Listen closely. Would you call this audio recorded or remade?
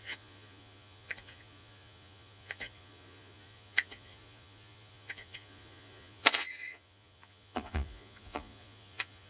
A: remade